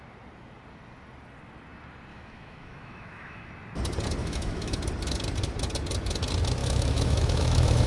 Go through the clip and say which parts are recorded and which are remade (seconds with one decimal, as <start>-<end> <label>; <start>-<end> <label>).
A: 0.0-2.1 recorded; 2.1-3.5 remade; 3.5-4.2 recorded; 4.2-4.8 remade; 4.8-6.6 recorded; 6.6-7.9 remade